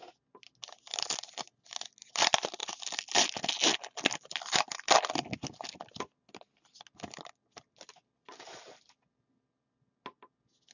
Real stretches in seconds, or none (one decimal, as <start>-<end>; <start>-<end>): 0.0-10.7